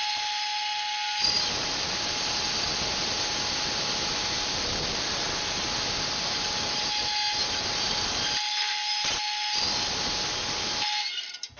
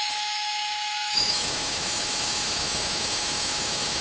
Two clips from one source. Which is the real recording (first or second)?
first